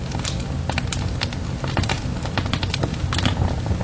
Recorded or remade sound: recorded